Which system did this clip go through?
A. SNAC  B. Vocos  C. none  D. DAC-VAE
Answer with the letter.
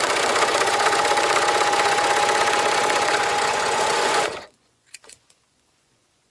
B